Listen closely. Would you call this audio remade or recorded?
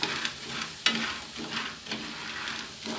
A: recorded